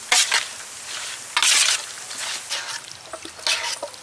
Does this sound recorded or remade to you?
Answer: recorded